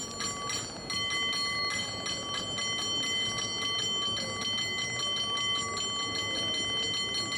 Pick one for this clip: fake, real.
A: real